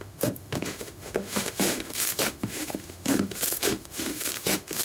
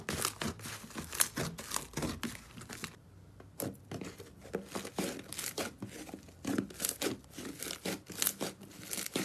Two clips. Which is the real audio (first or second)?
second